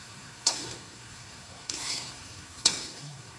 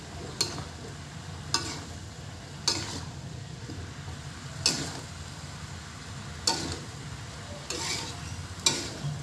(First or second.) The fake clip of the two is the first